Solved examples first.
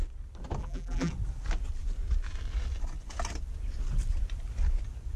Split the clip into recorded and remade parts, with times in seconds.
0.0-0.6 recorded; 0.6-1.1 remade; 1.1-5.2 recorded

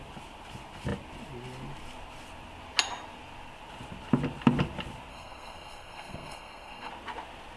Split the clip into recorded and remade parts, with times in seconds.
0.0-5.1 recorded; 5.1-6.9 remade; 6.9-7.6 recorded

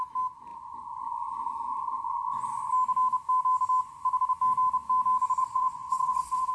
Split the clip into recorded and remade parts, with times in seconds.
0.0-5.4 recorded; 5.4-6.5 remade

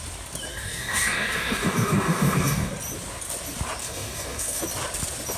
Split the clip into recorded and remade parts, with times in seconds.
0.0-0.5 recorded; 0.5-2.7 remade; 2.7-3.8 recorded; 3.8-4.6 remade; 4.6-5.4 recorded

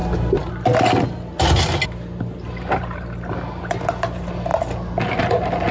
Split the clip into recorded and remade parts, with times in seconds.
0.0-5.7 recorded